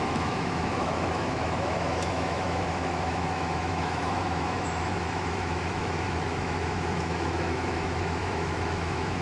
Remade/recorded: remade